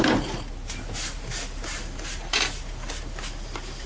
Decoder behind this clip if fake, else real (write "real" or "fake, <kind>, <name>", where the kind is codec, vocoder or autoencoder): real